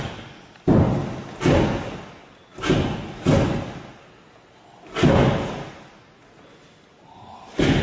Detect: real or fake real